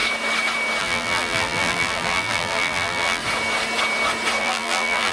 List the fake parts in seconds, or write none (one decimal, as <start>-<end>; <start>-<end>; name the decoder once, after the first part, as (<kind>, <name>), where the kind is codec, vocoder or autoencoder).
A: 0.8-3.2 (vocoder, BigVGAN v2); 4.4-5.1